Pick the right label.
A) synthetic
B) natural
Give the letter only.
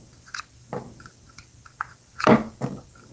B